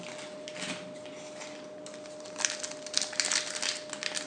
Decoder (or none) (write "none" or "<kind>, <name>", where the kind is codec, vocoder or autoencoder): none